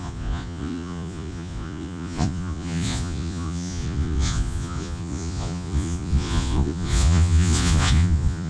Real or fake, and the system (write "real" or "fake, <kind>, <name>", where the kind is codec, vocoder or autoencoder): fake, vocoder, Vocos